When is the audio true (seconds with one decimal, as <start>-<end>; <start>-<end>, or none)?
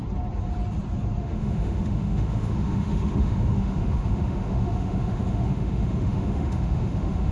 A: 0.0-1.2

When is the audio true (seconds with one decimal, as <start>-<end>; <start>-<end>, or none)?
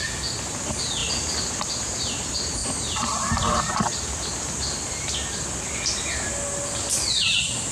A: 0.0-7.7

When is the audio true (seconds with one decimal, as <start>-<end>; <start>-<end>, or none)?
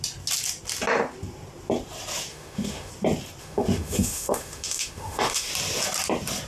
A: 0.0-2.3; 2.9-3.4; 5.5-6.5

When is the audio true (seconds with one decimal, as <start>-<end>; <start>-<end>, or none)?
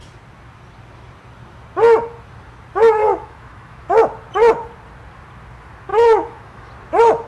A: 0.0-3.0; 3.8-5.9; 6.7-7.3